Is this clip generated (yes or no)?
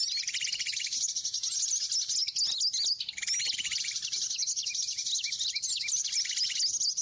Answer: no